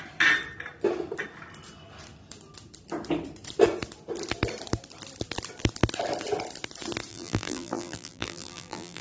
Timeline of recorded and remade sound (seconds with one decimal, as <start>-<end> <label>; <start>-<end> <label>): 0.0-7.1 recorded; 7.1-9.0 remade